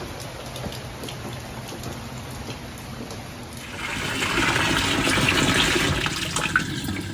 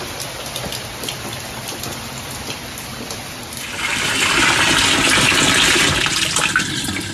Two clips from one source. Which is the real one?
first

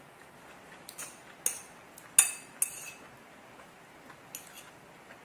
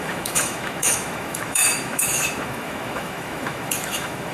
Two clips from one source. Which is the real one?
first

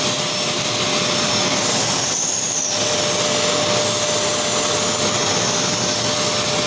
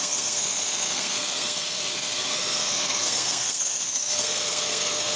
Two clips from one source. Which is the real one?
first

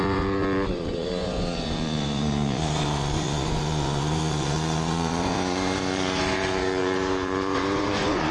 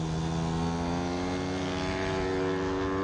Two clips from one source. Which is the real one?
second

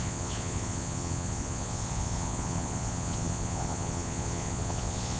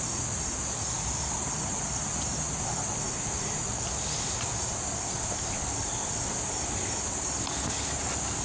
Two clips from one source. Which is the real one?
second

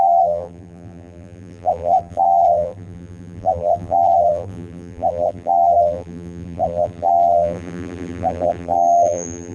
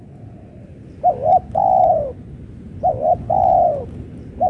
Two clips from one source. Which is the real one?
second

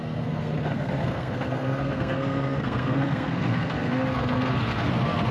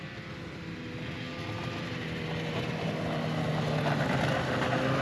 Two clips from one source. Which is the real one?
second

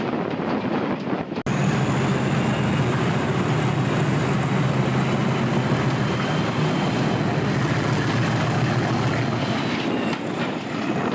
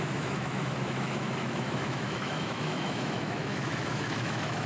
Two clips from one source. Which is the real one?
first